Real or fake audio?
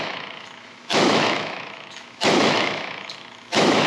fake